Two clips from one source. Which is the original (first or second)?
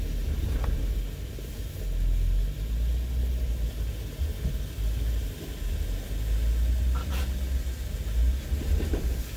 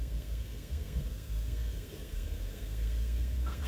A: first